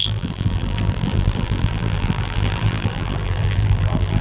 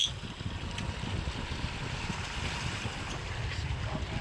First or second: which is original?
second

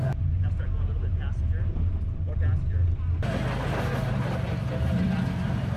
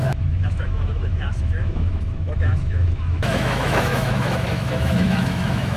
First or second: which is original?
first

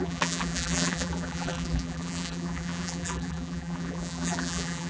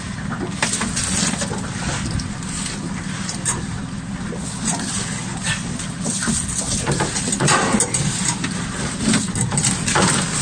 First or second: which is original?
second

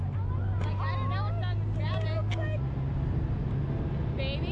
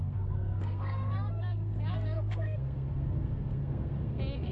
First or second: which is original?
first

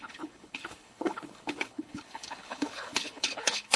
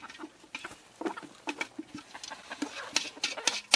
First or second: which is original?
second